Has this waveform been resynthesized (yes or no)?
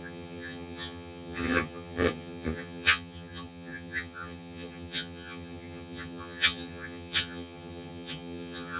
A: yes